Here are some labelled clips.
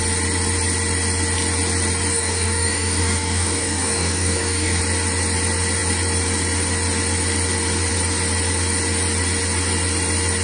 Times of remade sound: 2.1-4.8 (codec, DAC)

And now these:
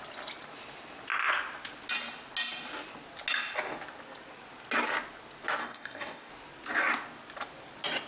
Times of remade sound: 5.6-6.3 (codec, DAC)

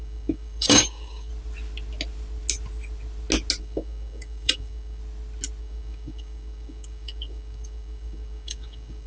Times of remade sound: 0.0-1.3 (codec, DAC); 3.6-5.0; 5.6-9.1

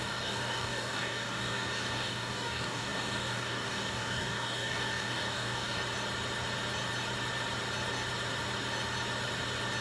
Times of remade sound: 0.0-5.8 (codec, DAC)

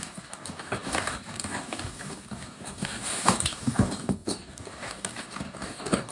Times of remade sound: 0.0-6.1 (codec, DAC)

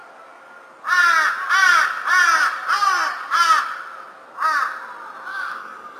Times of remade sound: 5.3-6.0 (codec, DAC)

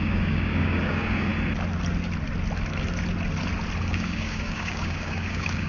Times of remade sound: 0.0-1.3 (codec, DAC); 3.8-5.7